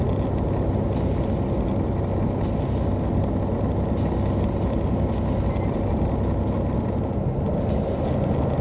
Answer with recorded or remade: recorded